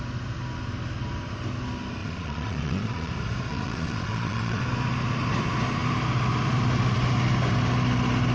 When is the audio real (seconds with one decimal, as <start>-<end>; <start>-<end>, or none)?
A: 0.0-2.0; 3.1-3.5; 4.6-8.3